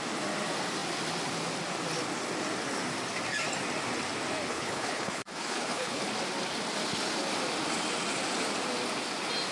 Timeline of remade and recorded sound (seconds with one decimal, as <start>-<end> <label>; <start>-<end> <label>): 0.0-4.5 recorded; 4.5-6.0 remade; 6.0-9.5 recorded